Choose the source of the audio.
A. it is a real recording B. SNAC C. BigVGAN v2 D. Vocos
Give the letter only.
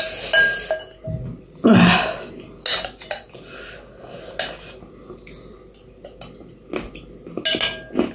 A